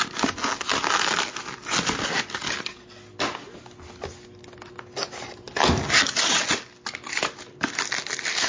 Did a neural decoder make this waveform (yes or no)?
no